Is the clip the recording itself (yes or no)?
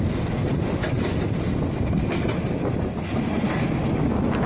yes